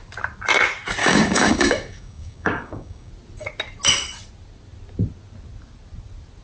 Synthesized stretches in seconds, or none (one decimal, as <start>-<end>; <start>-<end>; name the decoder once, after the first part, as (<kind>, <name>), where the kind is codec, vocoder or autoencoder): 1.0-3.1 (codec, DAC)